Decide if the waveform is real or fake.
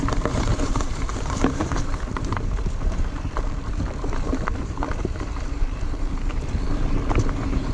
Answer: fake